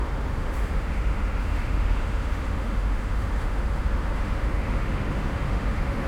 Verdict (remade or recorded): remade